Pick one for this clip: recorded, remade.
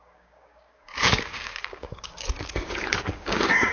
remade